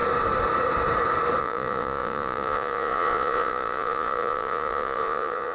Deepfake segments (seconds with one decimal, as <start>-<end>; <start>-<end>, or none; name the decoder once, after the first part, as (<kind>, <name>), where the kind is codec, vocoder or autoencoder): 1.4-5.5 (vocoder, Vocos)